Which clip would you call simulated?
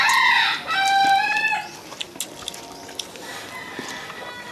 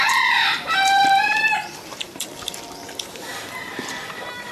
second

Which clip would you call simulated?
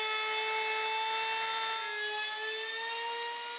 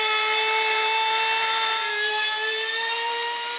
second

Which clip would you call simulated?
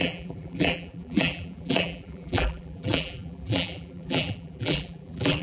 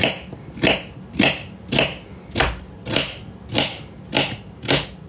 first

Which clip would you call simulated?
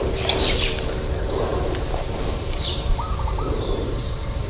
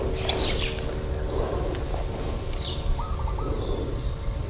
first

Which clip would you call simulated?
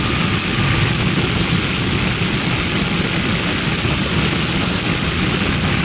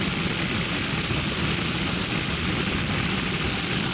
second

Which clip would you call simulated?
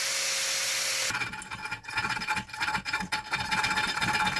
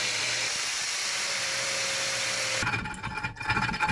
second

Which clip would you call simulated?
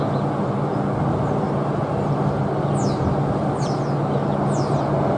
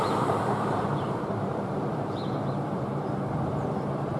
second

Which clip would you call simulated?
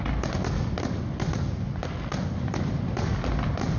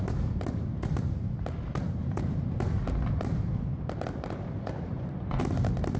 second